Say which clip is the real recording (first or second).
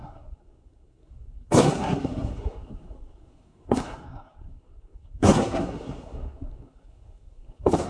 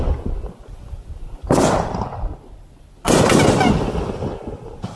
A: second